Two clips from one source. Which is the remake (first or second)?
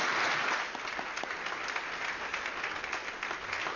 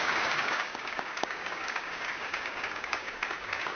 second